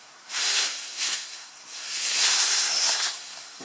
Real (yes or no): no